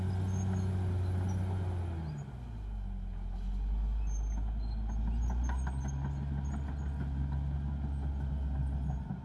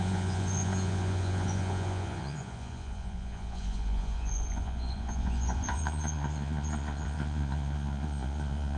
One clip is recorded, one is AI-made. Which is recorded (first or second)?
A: first